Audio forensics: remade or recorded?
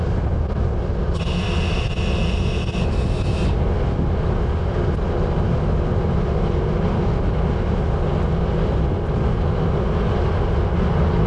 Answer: recorded